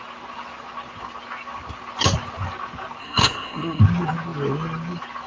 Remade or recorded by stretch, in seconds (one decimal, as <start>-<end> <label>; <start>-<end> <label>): 0.0-3.0 recorded; 3.0-3.8 remade; 3.8-5.3 recorded